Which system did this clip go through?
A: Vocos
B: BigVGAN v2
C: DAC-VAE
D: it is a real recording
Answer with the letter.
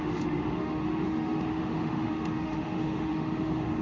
C